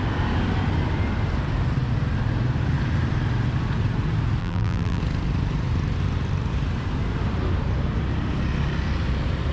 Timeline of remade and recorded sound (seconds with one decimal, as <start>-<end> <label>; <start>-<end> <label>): 0.0-4.4 recorded; 4.4-5.0 remade; 5.0-9.5 recorded